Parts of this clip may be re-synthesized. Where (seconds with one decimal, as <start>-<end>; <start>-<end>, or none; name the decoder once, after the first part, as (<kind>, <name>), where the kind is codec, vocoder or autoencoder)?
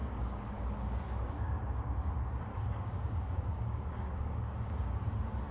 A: 0.0-2.1 (codec, DAC); 2.5-5.0